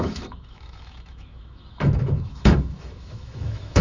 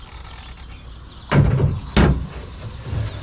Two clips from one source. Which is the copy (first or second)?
first